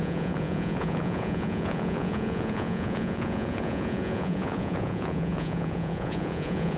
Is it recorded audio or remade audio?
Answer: remade